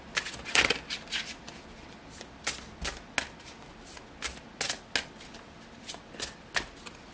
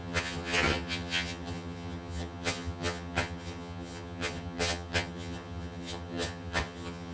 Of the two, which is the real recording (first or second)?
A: first